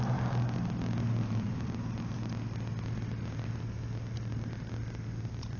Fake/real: real